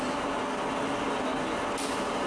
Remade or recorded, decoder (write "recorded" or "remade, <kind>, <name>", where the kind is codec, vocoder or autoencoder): recorded